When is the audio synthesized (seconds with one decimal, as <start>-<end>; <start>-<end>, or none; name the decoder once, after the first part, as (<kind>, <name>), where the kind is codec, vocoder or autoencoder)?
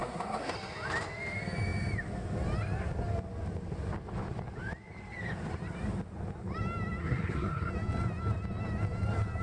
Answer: 0.0-0.5 (codec, SNAC); 7.0-7.7